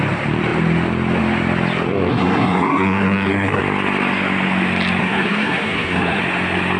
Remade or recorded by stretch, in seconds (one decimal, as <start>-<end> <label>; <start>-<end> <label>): 0.0-2.1 recorded; 2.1-3.6 remade; 3.6-5.0 recorded; 5.0-6.2 remade; 6.2-6.8 recorded